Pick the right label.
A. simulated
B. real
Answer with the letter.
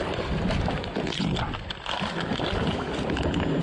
B